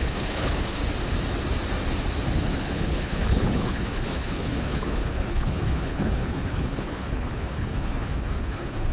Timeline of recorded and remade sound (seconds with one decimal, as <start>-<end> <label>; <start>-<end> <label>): 0.0-0.8 remade; 0.8-2.3 recorded; 2.3-8.9 remade